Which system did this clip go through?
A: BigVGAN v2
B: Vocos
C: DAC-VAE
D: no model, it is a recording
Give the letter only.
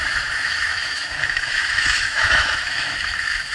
C